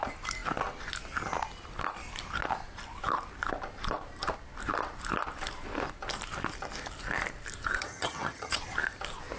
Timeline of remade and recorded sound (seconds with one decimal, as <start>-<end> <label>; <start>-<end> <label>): 0.0-7.7 recorded; 7.7-8.6 remade; 8.6-9.4 recorded